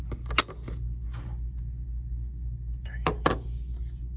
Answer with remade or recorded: recorded